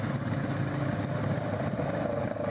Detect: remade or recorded recorded